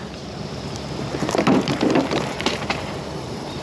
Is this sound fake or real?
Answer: fake